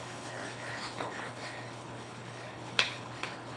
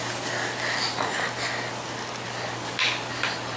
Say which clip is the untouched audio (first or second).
second